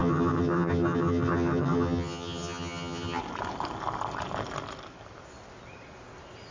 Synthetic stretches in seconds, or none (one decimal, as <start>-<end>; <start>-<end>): 0.0-3.2